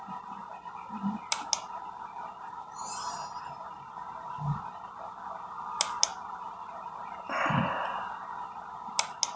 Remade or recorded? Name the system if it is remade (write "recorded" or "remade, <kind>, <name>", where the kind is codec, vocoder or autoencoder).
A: recorded